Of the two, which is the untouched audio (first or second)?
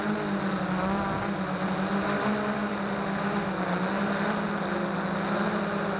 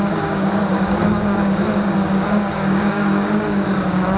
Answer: first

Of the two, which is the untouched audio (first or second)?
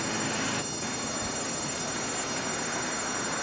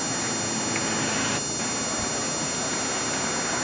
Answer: second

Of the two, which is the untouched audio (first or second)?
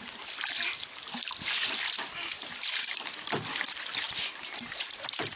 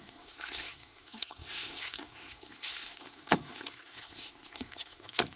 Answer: first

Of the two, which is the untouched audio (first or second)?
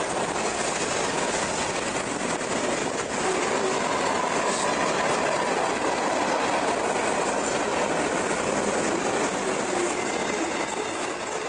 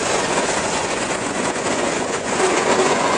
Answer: first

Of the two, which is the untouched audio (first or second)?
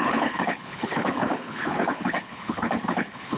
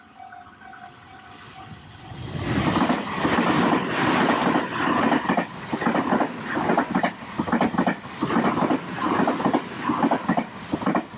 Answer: second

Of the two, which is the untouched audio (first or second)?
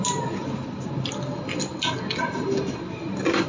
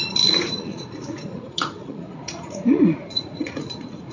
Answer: first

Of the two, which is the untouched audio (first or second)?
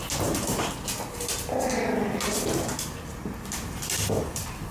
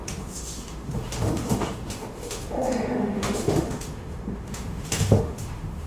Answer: first